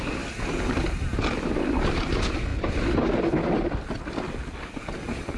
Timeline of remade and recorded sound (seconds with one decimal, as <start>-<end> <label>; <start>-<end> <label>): 0.0-5.4 recorded